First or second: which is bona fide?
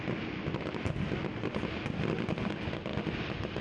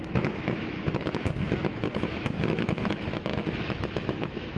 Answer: first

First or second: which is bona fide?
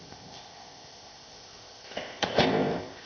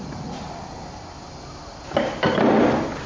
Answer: second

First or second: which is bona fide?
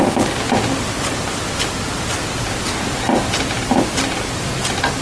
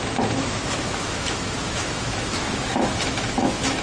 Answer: first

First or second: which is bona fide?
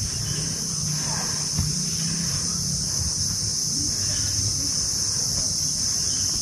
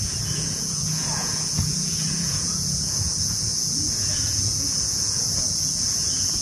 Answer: first